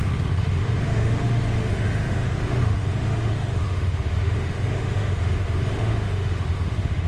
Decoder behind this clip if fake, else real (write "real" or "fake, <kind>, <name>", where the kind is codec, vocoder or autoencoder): fake, autoencoder, DAC-VAE